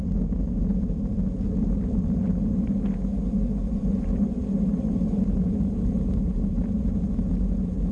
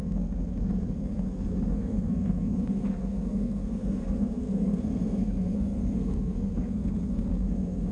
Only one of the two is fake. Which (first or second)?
second